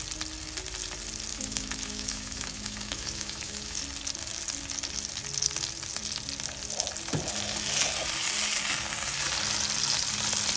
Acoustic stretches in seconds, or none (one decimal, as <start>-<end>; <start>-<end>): 0.0-1.3; 3.8-10.6